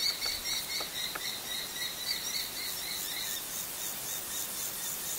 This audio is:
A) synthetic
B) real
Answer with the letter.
A